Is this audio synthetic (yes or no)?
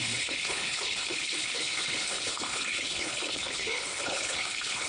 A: yes